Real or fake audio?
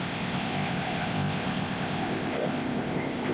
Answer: fake